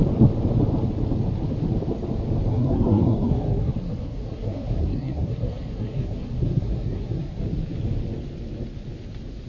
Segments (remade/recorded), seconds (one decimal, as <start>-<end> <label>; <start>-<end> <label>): 0.0-2.5 recorded; 2.5-7.4 remade; 7.4-9.5 recorded